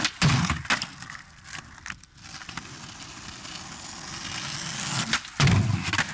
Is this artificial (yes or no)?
no